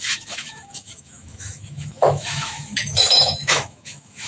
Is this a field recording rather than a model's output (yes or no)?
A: no